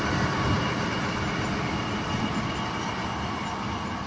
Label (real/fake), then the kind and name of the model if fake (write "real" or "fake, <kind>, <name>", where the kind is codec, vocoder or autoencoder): real